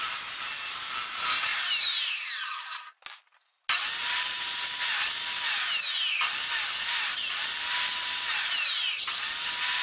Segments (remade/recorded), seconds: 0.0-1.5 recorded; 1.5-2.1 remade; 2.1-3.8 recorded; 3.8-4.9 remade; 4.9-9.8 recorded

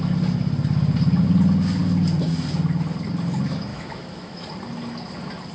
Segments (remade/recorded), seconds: 0.0-3.7 recorded; 3.7-4.5 remade; 4.5-5.5 recorded

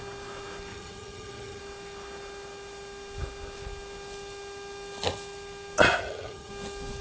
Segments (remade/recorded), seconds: 0.0-0.7 recorded; 0.7-1.6 remade; 1.6-6.0 recorded; 6.0-6.5 remade; 6.5-7.0 recorded

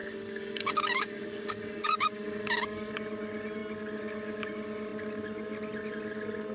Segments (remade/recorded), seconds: 0.0-2.9 remade; 2.9-6.5 recorded